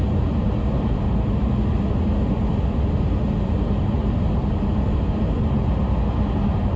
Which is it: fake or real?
real